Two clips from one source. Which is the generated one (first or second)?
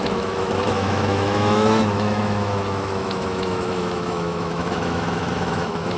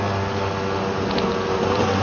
first